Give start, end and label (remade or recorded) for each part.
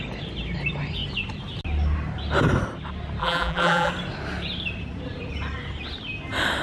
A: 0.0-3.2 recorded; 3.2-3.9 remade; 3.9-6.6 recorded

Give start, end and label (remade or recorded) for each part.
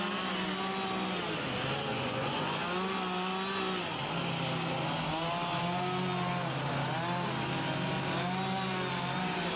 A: 0.0-1.9 recorded; 1.9-2.6 remade; 2.6-9.6 recorded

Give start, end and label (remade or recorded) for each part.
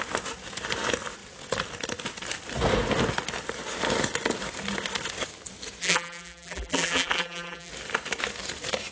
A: 0.0-5.8 recorded; 5.8-7.7 remade; 7.7-8.9 recorded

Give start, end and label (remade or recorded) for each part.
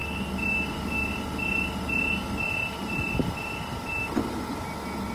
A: 0.0-5.1 recorded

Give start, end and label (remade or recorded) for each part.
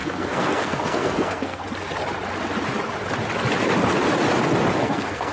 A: 0.0-1.6 remade; 1.6-4.8 recorded; 4.8-5.3 remade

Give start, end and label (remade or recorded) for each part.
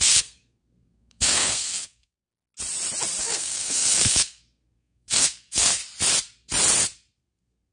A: 0.0-2.3 remade; 2.3-3.2 recorded; 3.2-5.8 remade; 5.8-7.2 recorded; 7.2-7.7 remade